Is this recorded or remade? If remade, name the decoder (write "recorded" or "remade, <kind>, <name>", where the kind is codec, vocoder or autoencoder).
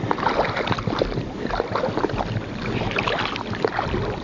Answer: recorded